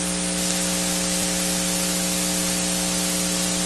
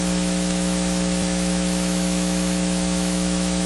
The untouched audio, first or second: first